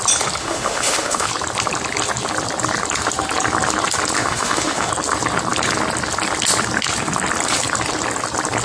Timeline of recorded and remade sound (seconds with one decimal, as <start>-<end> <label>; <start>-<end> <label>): 0.0-0.4 recorded; 0.4-1.3 remade; 1.3-4.2 recorded; 4.2-4.9 remade; 4.9-8.6 recorded